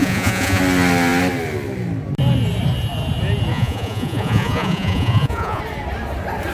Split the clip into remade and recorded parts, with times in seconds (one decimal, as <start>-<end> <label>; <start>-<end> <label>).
0.0-0.6 remade; 0.6-3.5 recorded; 3.5-5.6 remade; 5.6-6.5 recorded